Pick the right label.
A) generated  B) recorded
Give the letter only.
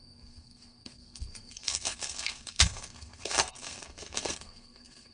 A